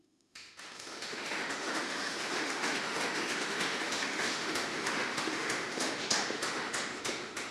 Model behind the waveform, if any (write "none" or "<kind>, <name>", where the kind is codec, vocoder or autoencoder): autoencoder, DAC-VAE